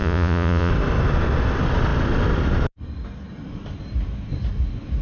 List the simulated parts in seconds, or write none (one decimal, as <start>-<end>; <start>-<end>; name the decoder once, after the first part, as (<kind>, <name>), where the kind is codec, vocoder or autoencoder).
0.0-0.7 (vocoder, Vocos)